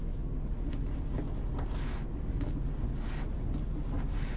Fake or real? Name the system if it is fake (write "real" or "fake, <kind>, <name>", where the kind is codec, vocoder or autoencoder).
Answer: real